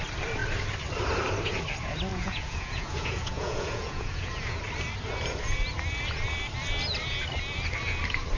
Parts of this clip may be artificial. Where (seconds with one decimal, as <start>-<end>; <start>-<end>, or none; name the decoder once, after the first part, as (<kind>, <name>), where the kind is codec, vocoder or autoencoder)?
2.1-4.6 (vocoder, Vocos)